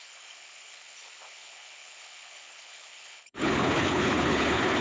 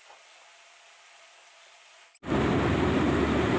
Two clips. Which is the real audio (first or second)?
second